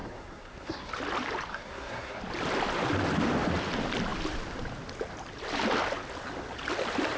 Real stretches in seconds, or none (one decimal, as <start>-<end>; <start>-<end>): 0.9-1.5; 2.2-7.2